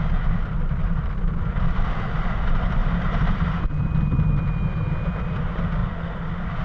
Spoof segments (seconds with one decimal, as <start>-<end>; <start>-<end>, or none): 0.5-1.2; 2.8-3.6